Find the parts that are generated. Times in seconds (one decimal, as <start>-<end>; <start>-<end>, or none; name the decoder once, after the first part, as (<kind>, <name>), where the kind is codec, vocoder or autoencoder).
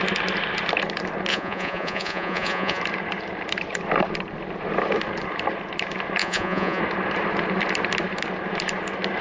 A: 1.3-2.8 (vocoder, Vocos); 6.2-6.8